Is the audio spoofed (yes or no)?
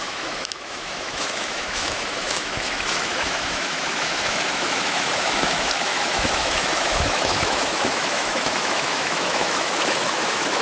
yes